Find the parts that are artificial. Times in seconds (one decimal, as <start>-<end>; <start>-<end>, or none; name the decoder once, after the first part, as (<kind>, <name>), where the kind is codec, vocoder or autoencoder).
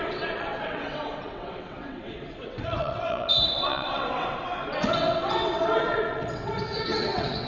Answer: 0.0-7.5 (vocoder, WaveNeXt)